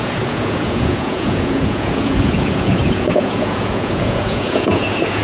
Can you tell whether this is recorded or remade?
remade